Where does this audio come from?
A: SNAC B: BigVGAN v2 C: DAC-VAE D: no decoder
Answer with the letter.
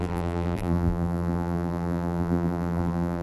B